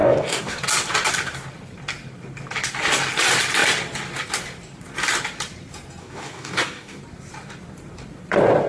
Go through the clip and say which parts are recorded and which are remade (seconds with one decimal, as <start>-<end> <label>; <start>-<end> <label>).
0.0-0.6 remade; 0.6-6.0 recorded; 6.0-7.0 remade; 7.0-8.7 recorded